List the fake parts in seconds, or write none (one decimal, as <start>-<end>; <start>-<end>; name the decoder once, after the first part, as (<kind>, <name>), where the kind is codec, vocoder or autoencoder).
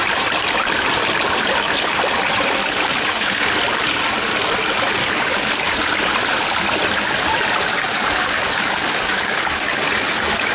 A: 2.6-3.4 (codec, DAC); 5.0-5.5; 7.7-10.5